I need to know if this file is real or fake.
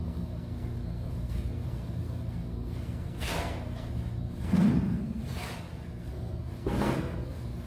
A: fake